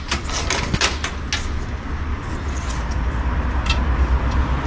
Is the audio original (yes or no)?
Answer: yes